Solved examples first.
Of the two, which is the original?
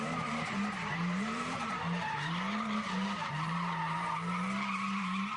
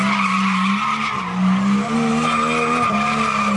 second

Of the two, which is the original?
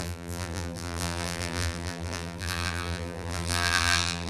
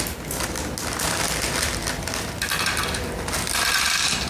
second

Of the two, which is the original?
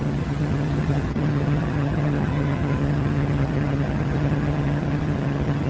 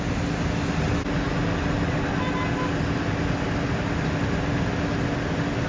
second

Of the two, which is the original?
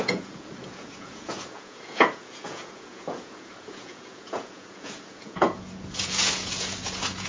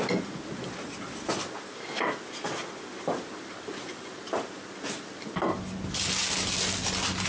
second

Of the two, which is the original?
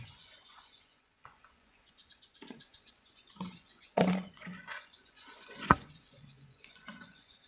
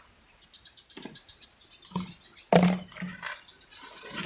second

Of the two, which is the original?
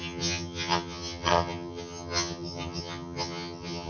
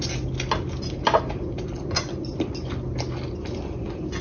second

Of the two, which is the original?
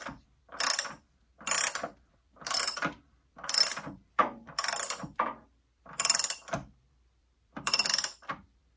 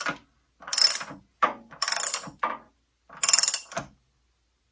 second